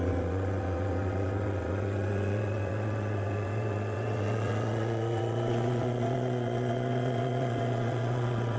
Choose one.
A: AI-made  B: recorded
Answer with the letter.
A